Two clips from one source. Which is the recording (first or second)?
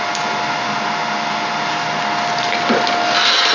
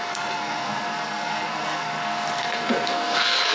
first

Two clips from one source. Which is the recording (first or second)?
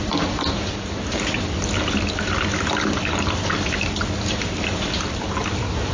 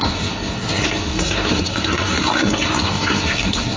first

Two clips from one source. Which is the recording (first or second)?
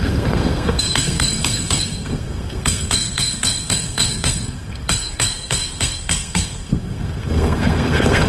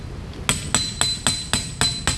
second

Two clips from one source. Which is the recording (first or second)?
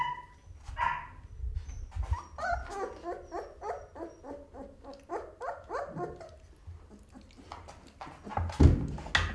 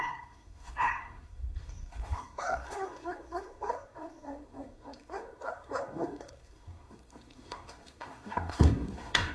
first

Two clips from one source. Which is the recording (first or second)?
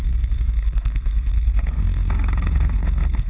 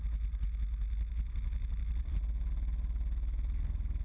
second